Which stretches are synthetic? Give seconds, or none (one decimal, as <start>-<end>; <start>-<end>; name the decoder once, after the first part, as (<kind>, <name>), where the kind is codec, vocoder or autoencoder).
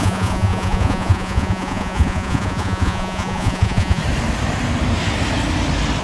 0.0-4.0 (vocoder, Vocos)